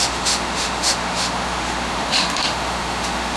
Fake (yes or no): yes